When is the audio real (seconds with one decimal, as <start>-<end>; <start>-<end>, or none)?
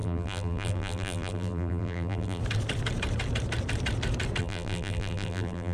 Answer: 2.4-4.4